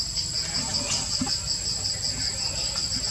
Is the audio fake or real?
real